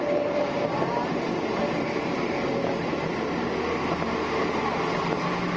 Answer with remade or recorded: recorded